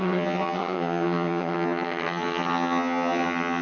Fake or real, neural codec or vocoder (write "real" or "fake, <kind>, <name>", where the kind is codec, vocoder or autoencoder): fake, vocoder, HiFi-GAN